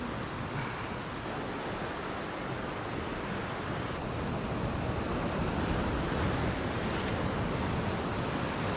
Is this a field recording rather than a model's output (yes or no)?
yes